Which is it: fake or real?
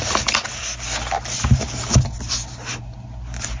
real